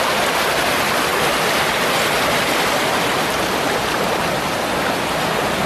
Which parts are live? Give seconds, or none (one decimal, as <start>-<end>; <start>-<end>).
0.0-5.7